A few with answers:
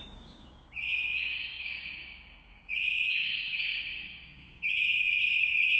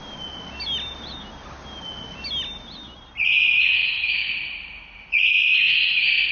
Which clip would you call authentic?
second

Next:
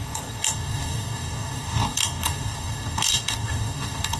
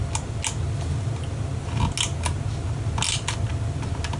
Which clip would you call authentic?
second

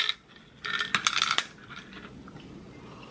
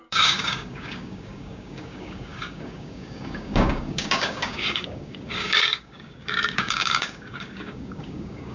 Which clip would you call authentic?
first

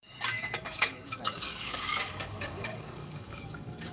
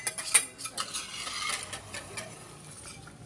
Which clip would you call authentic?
second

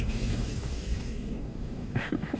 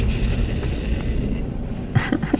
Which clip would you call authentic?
second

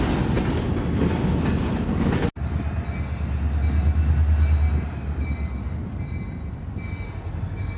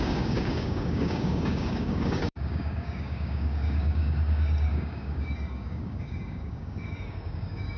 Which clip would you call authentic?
first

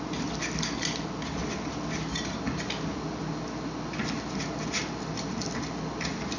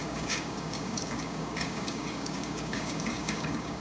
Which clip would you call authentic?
first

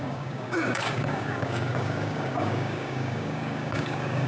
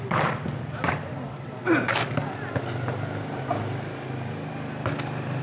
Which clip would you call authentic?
second